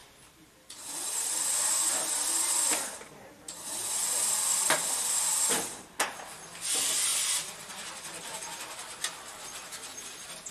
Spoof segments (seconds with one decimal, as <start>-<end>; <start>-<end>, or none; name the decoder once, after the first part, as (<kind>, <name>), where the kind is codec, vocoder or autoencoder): none